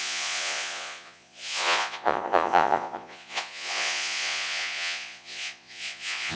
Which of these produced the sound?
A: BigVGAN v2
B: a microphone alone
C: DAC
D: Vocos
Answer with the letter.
D